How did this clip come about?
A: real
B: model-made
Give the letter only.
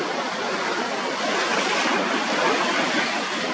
B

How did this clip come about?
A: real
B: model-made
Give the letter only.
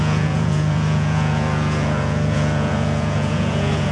B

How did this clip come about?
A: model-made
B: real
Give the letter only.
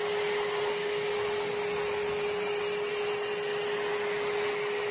B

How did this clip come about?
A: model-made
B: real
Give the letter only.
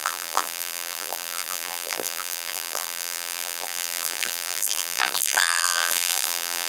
A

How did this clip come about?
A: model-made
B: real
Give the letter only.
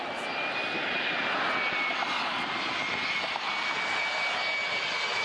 B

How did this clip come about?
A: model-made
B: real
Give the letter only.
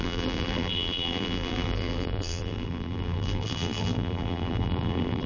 A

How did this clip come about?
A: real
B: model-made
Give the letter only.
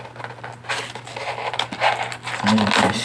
A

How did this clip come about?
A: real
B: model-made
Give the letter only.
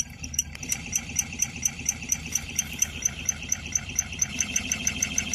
B